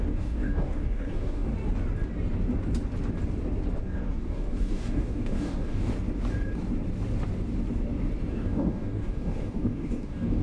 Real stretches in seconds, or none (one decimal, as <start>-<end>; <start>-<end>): 1.5-3.8; 5.9-8.3